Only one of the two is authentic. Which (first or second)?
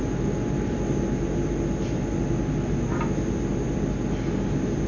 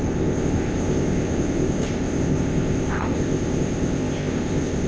first